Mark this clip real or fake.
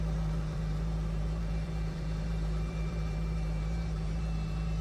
fake